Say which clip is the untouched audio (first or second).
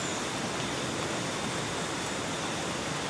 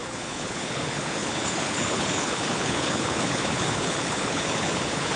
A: first